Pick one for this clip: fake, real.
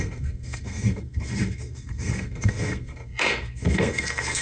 fake